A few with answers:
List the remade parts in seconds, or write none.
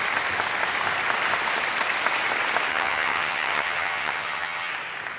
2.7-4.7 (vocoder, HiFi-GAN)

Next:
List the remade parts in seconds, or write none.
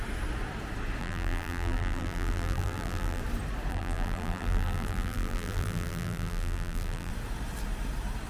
1.0-3.2 (vocoder, BigVGAN v2); 3.7-7.1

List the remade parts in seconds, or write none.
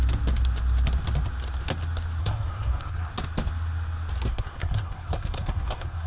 2.2-3.1 (codec, SNAC); 4.3-6.1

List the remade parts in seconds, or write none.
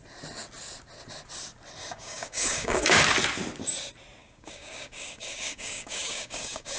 1.8-3.0 (codec, DAC); 4.2-6.8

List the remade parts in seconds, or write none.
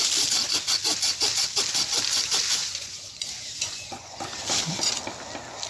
2.6-4.2 (vocoder, Vocos)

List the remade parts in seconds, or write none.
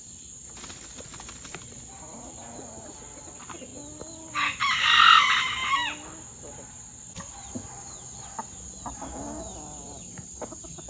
none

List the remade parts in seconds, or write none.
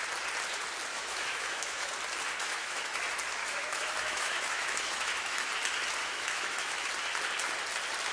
0.9-1.9 (autoencoder, DAC-VAE); 2.4-3.0; 3.4-5.5; 6.0-6.9